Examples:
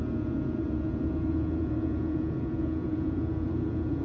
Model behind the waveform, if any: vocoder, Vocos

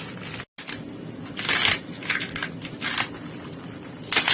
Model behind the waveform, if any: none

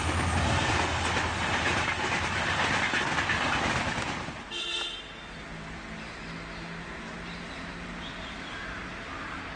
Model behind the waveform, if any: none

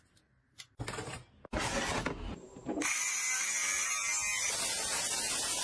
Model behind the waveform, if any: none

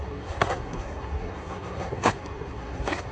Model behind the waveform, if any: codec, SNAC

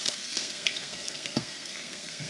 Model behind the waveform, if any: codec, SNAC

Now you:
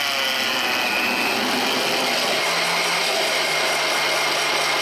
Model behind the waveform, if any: none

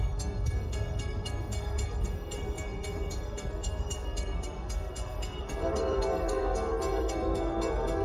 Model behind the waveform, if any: codec, SNAC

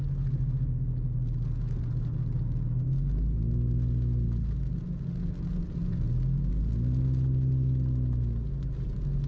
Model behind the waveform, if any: none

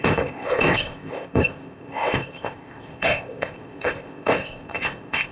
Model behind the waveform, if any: codec, ZipCodec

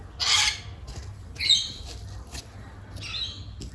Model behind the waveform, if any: none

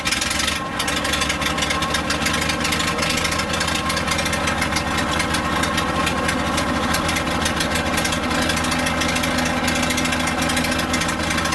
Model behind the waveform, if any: none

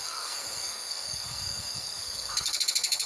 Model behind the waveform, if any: codec, SNAC